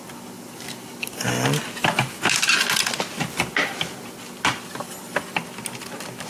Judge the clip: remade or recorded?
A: recorded